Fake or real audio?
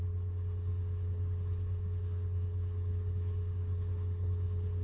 fake